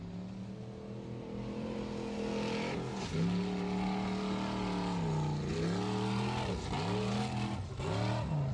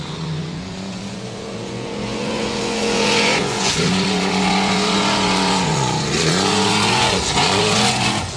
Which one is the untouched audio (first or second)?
first